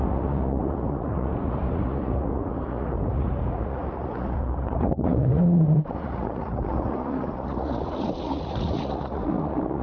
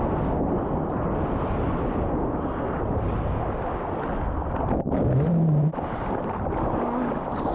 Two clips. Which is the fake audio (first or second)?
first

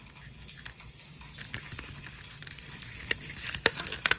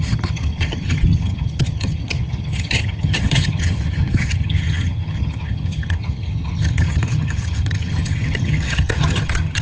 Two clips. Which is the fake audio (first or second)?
second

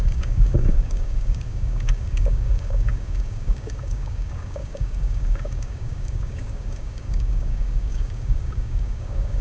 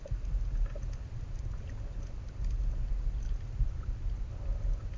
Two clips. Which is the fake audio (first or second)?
first